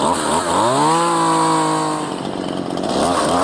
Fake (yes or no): no